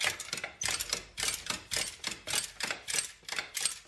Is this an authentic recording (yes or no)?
yes